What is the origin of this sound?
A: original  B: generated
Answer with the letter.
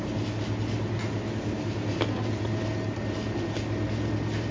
A